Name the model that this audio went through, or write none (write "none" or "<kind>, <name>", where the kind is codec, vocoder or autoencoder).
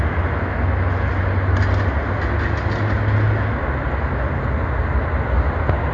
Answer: none